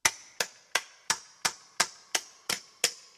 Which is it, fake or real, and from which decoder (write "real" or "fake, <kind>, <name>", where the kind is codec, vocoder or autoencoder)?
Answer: real